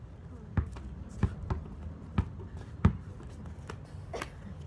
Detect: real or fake real